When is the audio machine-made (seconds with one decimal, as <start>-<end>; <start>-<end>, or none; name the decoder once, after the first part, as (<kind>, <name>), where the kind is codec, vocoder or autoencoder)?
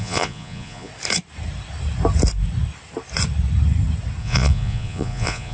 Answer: 0.0-0.9 (vocoder, Vocos); 4.2-5.5